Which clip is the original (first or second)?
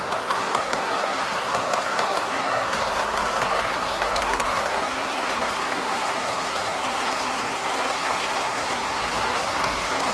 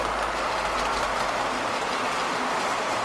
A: second